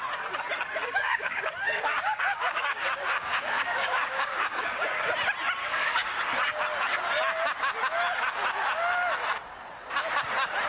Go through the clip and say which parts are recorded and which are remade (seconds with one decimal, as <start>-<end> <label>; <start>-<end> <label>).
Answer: 0.0-0.8 recorded; 0.8-5.1 remade; 5.1-5.6 recorded; 5.6-6.2 remade; 6.2-10.7 recorded